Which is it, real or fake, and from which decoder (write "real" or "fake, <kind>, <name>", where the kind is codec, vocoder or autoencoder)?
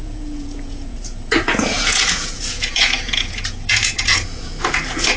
fake, vocoder, Vocos